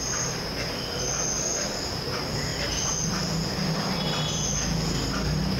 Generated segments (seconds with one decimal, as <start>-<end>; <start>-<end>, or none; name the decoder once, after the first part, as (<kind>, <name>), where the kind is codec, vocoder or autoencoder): none